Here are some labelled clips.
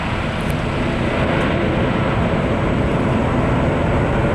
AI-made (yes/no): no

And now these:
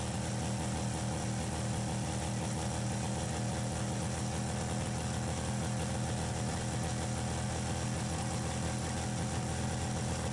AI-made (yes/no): no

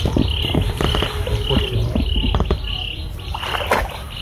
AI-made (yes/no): yes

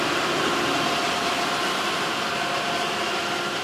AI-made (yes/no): no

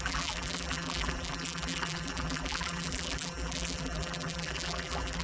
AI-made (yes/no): yes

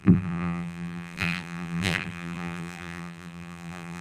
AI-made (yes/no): yes